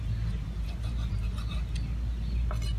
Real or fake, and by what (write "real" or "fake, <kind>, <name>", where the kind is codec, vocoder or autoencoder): real